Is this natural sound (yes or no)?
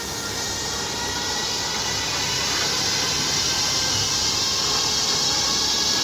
yes